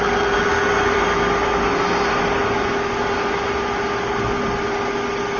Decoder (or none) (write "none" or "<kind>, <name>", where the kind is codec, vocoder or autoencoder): none